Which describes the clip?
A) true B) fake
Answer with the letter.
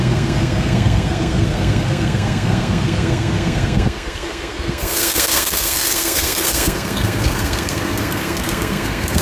B